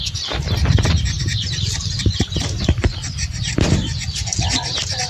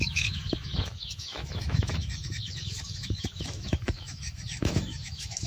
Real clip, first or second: first